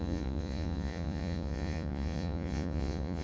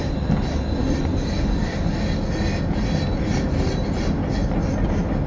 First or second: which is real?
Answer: second